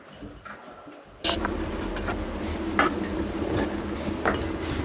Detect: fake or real real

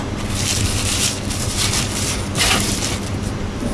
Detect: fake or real fake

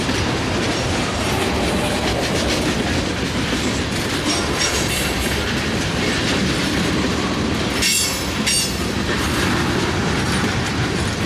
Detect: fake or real fake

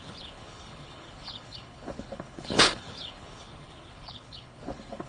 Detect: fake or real fake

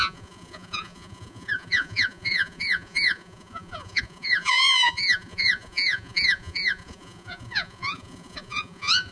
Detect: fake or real fake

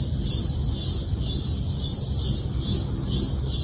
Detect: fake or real real